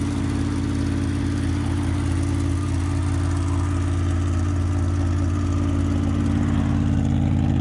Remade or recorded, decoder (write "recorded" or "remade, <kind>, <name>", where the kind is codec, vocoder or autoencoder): recorded